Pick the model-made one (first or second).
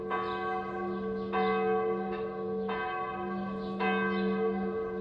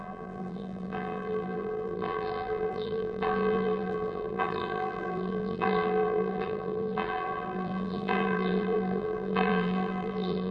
second